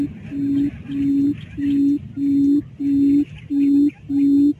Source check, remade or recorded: recorded